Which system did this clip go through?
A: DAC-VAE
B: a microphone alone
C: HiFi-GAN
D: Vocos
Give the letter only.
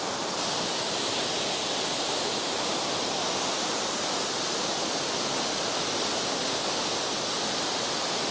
B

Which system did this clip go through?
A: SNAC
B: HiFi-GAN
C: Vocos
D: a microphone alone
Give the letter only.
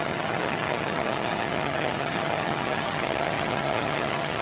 B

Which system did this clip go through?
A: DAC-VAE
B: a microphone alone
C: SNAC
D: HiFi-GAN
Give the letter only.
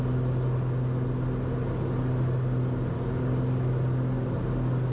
B